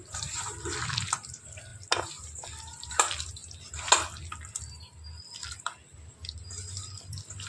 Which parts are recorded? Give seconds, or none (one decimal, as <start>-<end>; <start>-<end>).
3.4-5.5